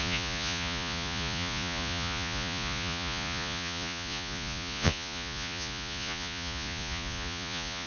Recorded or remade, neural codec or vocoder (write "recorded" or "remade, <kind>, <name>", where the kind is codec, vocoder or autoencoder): remade, vocoder, Vocos